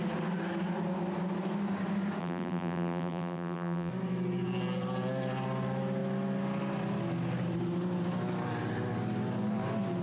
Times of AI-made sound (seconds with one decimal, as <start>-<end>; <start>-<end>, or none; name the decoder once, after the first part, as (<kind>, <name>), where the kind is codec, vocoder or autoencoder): 2.2-3.9 (vocoder, BigVGAN v2)

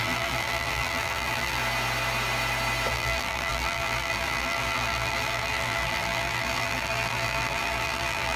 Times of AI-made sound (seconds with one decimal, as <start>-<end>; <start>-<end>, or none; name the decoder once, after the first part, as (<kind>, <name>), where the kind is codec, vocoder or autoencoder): 0.0-1.6 (vocoder, BigVGAN v2); 2.9-8.4

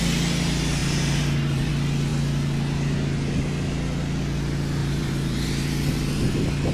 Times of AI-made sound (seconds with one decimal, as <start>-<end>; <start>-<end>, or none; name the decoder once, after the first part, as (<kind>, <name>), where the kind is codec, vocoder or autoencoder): 0.8-1.7 (vocoder, BigVGAN v2); 4.8-5.7

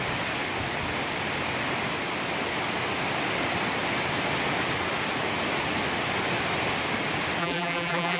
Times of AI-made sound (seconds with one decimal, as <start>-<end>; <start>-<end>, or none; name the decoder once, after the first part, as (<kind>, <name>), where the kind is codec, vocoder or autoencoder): 7.4-8.2 (vocoder, BigVGAN v2)

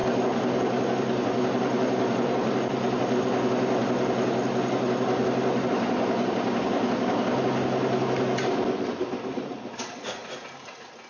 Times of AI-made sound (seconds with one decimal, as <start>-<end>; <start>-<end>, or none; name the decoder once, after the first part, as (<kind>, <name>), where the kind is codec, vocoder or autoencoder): 0.0-3.2 (vocoder, BigVGAN v2)